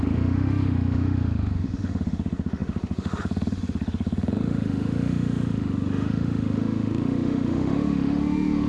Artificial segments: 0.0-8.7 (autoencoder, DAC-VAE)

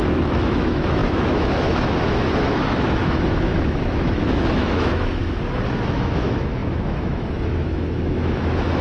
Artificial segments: 0.0-5.2 (autoencoder, DAC-VAE); 5.9-8.8

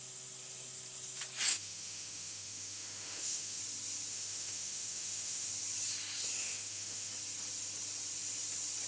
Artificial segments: 1.5-3.6 (autoencoder, DAC-VAE); 4.1-5.5; 6.4-7.1

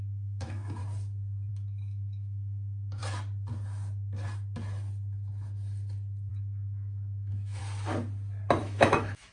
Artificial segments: 0.0-0.8 (autoencoder, DAC-VAE); 1.5-3.0; 6.3-7.6; 8.6-9.3

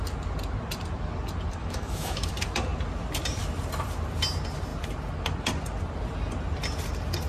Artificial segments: 1.6-2.3 (autoencoder, DAC-VAE)

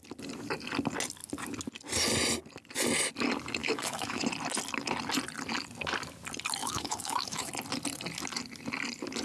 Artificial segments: 3.6-4.2 (autoencoder, DAC-VAE); 6.6-7.5